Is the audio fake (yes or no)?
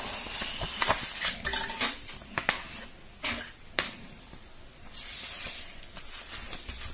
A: no